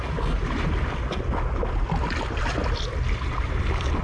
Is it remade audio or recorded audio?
recorded